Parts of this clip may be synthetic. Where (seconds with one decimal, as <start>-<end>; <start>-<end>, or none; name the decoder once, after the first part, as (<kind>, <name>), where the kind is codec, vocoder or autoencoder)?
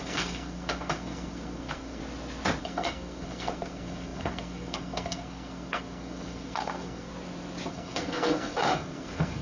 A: 0.0-2.0 (codec, SNAC); 2.6-7.1; 7.7-9.4